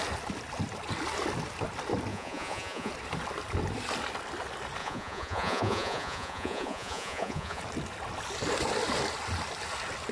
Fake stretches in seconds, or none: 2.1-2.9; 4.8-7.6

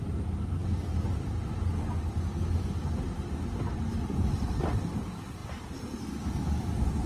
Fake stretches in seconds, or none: none